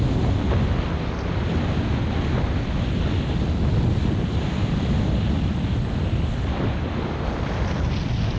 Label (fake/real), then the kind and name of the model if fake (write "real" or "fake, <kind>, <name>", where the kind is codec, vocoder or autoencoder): real